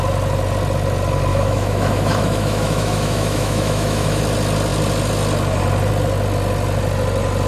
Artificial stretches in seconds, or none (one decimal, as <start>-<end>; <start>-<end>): 1.3-4.2